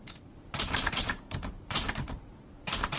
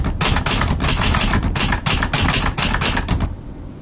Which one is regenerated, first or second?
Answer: first